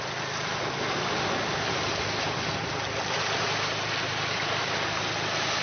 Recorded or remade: recorded